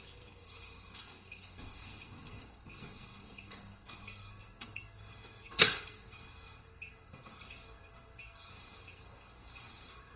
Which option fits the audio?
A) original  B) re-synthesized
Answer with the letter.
B